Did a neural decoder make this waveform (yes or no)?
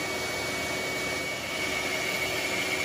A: no